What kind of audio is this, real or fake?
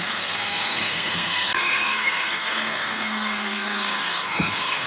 fake